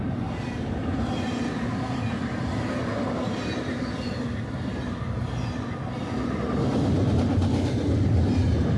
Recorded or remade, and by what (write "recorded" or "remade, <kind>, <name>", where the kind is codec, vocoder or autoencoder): recorded